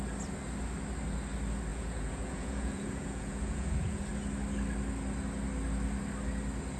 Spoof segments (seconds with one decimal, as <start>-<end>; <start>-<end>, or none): 1.7-4.1